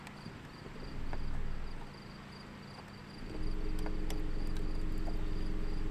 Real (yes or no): yes